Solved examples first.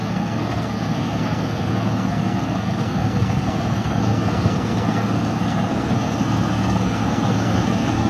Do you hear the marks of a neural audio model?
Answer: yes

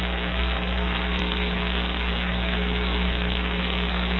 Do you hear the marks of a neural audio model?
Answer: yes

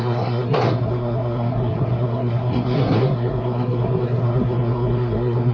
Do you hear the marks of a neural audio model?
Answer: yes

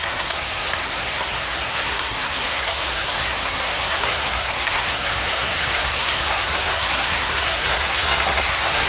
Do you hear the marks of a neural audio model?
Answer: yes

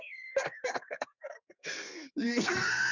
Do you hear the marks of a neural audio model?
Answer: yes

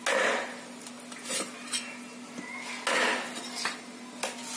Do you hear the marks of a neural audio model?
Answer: no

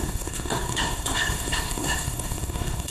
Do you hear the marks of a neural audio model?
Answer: yes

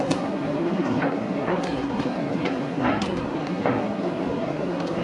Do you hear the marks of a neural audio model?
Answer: yes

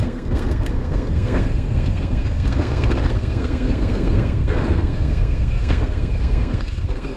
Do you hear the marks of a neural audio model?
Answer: yes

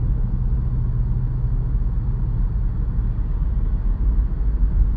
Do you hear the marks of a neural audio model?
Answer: no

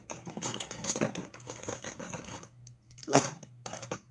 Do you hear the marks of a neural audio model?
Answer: yes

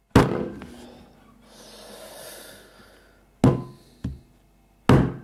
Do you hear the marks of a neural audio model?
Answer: no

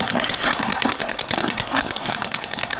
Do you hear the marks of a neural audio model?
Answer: yes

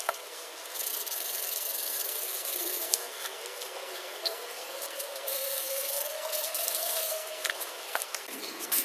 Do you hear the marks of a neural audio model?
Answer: yes